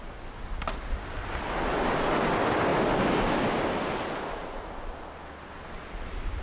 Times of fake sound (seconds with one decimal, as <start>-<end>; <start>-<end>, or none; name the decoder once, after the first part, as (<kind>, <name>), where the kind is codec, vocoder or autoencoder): none